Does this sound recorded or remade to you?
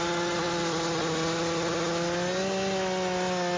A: recorded